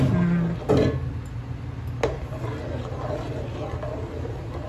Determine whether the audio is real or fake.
real